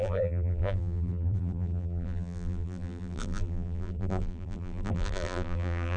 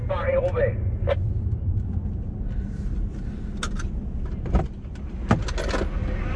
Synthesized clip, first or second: first